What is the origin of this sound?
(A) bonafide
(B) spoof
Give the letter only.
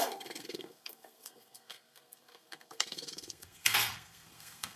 B